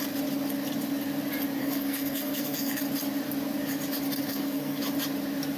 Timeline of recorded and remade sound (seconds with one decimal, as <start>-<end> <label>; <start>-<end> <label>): 0.0-1.6 recorded; 1.6-2.8 remade; 2.8-4.3 recorded; 4.3-4.8 remade; 4.8-5.6 recorded